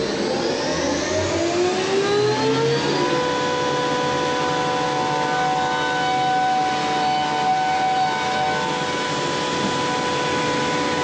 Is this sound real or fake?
real